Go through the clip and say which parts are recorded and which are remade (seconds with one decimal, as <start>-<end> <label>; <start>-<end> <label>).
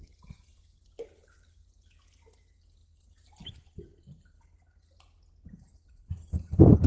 0.0-6.9 recorded